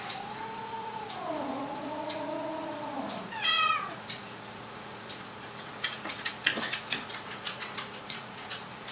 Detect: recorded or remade remade